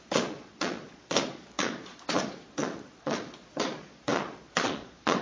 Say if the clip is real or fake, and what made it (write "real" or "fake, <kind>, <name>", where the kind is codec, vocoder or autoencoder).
fake, vocoder, Vocos